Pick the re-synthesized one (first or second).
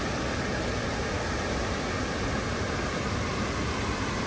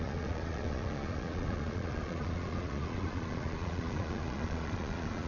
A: second